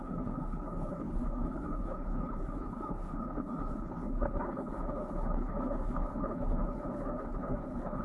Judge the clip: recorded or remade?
remade